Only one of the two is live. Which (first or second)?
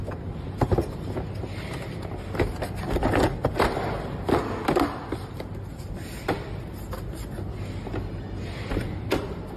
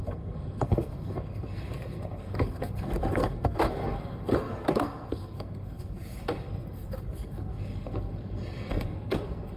first